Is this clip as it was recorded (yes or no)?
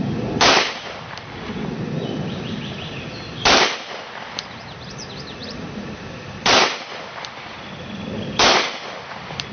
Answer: no